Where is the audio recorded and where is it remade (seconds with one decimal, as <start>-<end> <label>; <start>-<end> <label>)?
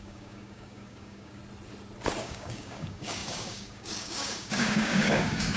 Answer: 0.0-1.4 remade; 1.4-2.2 recorded; 2.2-5.6 remade